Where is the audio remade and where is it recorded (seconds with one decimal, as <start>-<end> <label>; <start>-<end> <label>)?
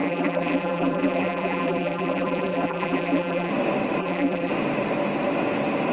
0.0-3.5 remade; 3.5-4.0 recorded; 4.0-4.5 remade; 4.5-5.9 recorded